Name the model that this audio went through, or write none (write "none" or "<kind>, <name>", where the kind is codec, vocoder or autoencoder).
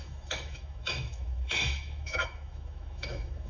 autoencoder, DAC-VAE